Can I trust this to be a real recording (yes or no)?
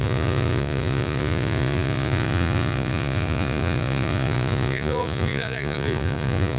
no